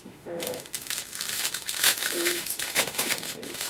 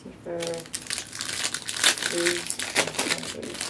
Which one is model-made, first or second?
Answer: first